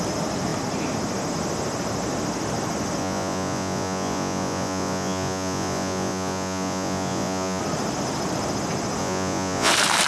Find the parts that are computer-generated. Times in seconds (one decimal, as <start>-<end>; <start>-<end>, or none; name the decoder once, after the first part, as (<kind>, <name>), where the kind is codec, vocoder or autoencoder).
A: 3.0-7.6 (vocoder, Vocos); 9.0-9.7